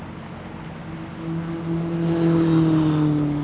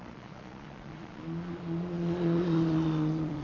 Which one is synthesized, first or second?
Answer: second